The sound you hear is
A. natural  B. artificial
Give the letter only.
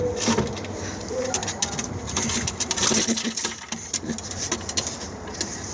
A